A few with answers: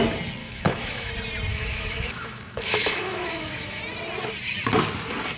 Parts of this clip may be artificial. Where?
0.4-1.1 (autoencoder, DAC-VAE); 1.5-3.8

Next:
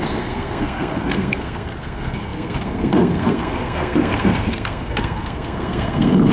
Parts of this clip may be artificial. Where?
0.0-6.3 (codec, SNAC)

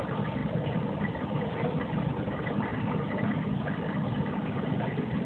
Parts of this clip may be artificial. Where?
none

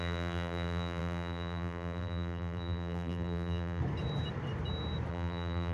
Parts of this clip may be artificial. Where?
0.0-3.8 (vocoder, BigVGAN v2); 5.1-5.7

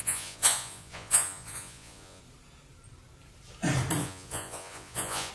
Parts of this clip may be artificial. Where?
0.0-2.2 (vocoder, Vocos); 4.0-5.3

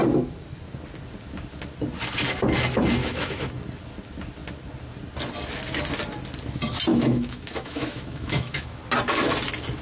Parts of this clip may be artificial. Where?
3.0-3.5 (autoencoder, DAC-VAE); 6.9-8.8